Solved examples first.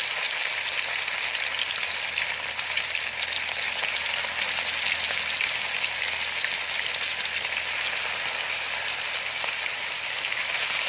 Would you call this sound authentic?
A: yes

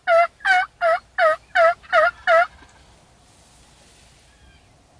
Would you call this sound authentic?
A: yes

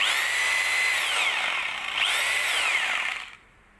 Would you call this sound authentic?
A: yes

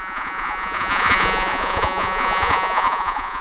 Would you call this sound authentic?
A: no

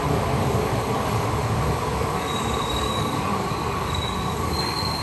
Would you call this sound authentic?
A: no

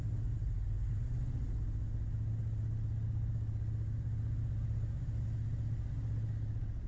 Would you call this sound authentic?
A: yes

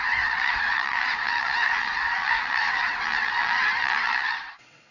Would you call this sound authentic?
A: no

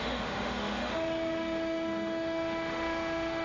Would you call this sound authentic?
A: no